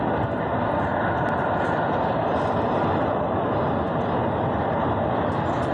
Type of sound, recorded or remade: recorded